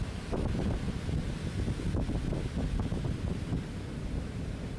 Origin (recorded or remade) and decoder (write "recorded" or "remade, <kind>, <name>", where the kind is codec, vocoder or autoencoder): recorded